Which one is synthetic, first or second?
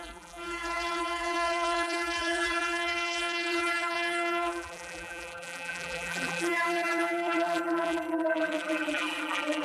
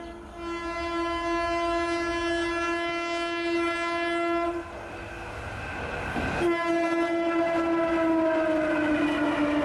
first